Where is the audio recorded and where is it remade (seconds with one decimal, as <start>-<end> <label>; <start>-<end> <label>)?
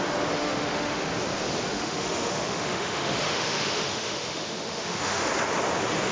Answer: 0.0-0.4 recorded; 0.4-1.1 remade; 1.1-1.7 recorded; 1.7-5.3 remade; 5.3-6.1 recorded